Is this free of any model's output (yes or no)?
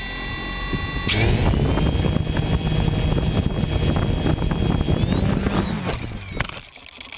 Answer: yes